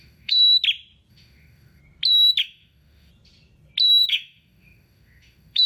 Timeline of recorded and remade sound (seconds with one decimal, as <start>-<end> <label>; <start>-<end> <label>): 0.0-0.4 remade; 0.4-1.1 recorded; 1.1-1.8 remade; 1.8-2.4 recorded; 2.4-3.1 remade; 3.1-4.1 recorded; 4.1-5.7 remade